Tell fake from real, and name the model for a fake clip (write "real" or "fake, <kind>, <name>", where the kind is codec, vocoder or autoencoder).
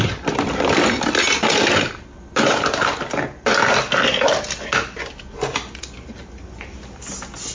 real